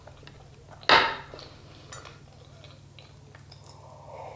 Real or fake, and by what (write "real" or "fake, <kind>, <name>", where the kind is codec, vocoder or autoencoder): real